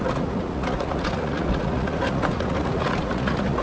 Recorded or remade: remade